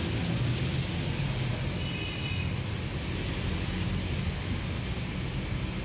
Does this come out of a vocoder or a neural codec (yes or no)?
no